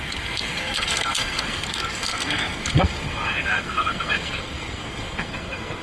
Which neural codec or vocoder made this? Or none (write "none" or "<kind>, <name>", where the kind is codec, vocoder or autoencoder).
codec, SNAC